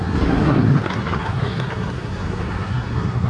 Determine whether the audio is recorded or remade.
remade